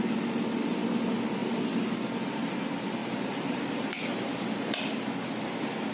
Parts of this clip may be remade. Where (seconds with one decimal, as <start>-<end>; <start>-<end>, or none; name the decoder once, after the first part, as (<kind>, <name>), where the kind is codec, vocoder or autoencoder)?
3.0-4.4 (vocoder, BigVGAN v2)